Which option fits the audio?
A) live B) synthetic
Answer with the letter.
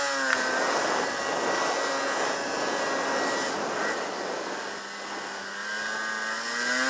A